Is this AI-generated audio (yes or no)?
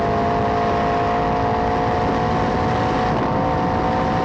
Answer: no